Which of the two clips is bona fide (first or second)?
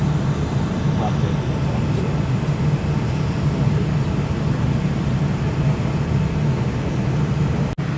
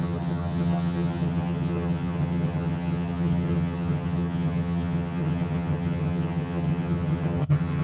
first